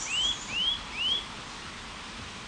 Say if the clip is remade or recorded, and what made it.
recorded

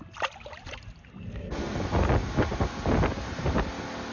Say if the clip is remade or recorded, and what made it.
recorded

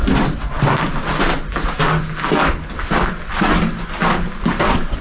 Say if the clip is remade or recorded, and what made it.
recorded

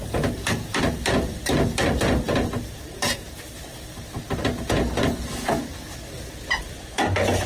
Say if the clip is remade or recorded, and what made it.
recorded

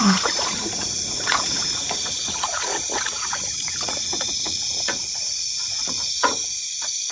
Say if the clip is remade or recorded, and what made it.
remade, vocoder, Vocos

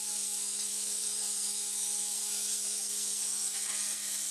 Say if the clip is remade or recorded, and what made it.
remade, codec, SNAC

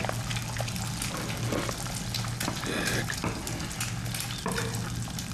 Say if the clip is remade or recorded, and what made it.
recorded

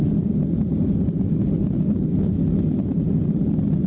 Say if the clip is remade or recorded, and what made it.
recorded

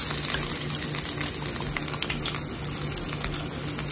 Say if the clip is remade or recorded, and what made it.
recorded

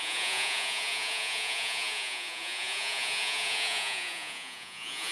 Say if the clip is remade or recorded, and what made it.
remade, vocoder, Vocos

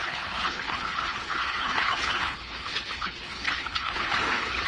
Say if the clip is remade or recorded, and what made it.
remade, codec, HILCodec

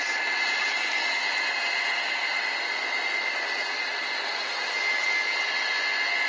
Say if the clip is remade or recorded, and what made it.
recorded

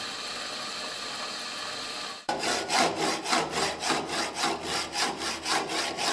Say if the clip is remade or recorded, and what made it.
recorded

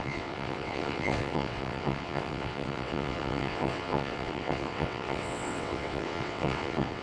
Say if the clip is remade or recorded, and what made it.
remade, vocoder, WaveNeXt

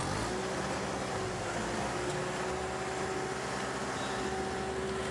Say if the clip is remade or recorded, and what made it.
recorded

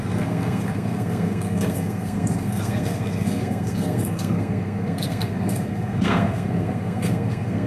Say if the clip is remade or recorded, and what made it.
remade, codec, SNAC